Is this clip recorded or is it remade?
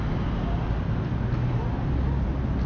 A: recorded